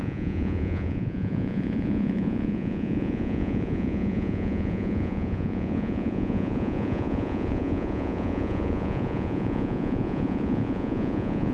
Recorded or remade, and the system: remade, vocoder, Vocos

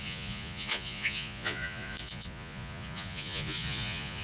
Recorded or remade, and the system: remade, vocoder, Vocos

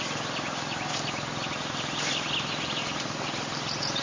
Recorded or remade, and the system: recorded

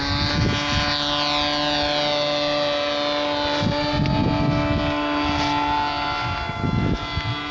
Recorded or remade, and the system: recorded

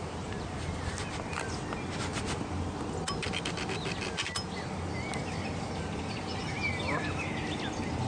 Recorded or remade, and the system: recorded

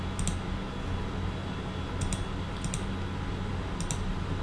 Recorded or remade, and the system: recorded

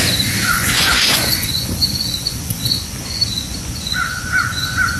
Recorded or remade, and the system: remade, vocoder, Vocos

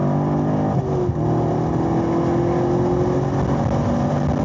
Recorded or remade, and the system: recorded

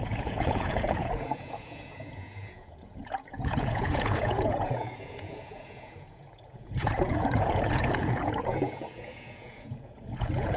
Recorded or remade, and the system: remade, vocoder, Vocos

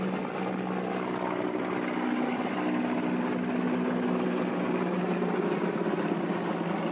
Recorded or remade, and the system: recorded